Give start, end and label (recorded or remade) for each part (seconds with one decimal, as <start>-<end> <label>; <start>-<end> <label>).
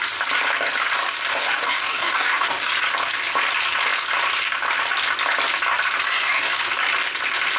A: 0.0-1.3 recorded; 1.3-2.7 remade; 2.7-6.1 recorded; 6.1-6.6 remade; 6.6-7.6 recorded